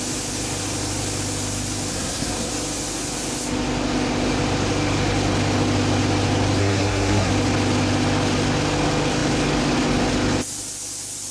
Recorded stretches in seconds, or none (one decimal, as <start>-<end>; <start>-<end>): 0.0-1.9; 2.5-6.6; 7.3-11.3